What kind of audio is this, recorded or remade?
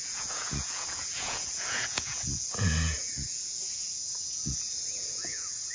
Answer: remade